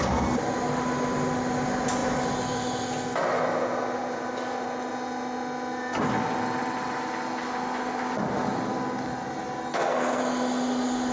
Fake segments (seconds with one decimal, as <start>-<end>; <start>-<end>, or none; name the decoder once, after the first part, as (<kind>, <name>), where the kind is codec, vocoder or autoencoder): 9.7-10.2 (codec, SNAC)